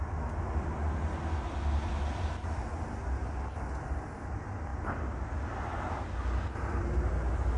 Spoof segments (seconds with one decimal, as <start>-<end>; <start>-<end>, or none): none